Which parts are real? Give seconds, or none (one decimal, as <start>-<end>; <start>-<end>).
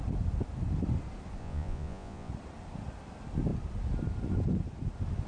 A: 0.0-1.4; 2.3-5.3